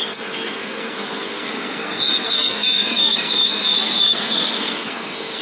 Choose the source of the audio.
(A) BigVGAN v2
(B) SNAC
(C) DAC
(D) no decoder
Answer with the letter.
B